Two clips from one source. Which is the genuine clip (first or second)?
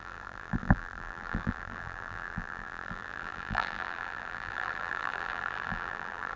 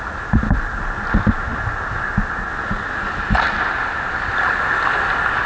second